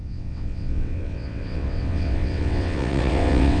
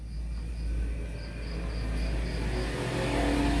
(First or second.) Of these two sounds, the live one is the second